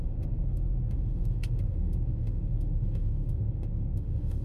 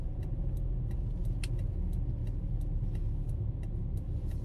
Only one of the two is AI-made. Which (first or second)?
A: first